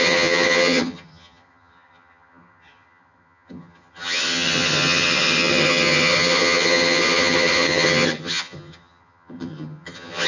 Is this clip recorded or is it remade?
remade